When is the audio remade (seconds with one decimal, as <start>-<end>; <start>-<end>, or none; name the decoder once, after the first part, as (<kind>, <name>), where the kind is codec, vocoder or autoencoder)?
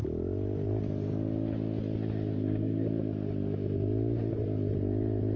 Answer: 2.3-2.9 (codec, SNAC)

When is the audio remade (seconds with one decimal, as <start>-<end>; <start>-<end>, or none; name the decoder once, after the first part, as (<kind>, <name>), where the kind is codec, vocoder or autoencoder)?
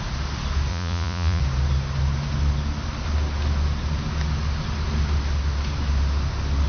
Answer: 0.7-1.4 (vocoder, Vocos)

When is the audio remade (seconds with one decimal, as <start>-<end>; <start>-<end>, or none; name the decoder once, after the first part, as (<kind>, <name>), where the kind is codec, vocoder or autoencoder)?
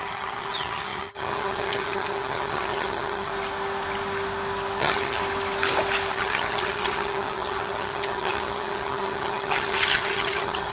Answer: 0.0-3.3 (vocoder, HiFi-GAN); 4.8-5.2; 6.1-10.7